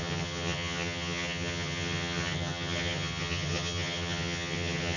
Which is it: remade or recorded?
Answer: remade